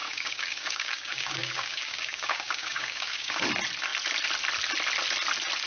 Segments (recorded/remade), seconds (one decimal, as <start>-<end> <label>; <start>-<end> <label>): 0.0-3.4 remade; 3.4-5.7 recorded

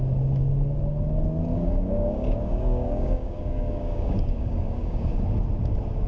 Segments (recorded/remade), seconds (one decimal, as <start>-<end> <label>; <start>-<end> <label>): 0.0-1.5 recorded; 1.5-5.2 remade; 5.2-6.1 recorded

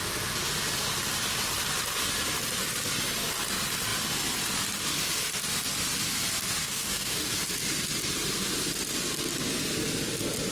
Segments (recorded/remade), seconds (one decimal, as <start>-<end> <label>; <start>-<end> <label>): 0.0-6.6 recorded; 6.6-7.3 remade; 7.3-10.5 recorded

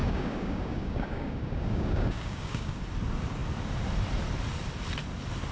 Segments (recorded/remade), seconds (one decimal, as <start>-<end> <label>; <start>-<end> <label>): 0.0-2.8 remade; 2.8-5.5 recorded

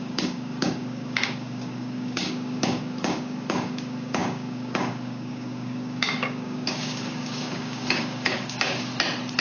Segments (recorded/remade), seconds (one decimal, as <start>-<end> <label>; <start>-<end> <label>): 0.0-8.9 remade; 8.9-9.4 recorded

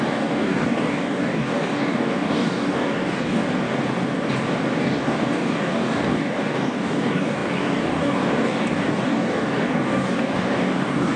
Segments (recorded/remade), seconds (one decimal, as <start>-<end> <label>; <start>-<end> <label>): 0.0-3.4 remade; 3.4-4.8 recorded; 4.8-11.2 remade

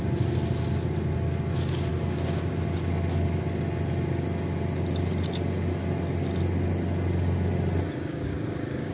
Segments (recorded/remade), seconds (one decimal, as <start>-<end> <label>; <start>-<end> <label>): 0.0-1.9 recorded; 1.9-2.5 remade; 2.5-8.1 recorded; 8.1-8.9 remade